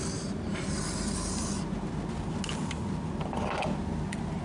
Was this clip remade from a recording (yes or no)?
no